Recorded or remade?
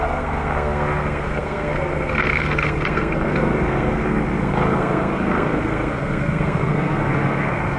remade